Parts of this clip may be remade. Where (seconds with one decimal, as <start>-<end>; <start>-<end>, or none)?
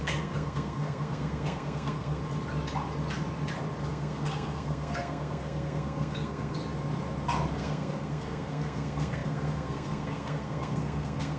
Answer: 0.0-2.2; 3.9-6.6; 7.5-11.4